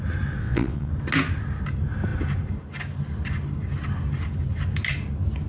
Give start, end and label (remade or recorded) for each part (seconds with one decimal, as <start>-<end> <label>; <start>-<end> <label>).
0.0-0.4 recorded; 0.4-0.9 remade; 0.9-5.5 recorded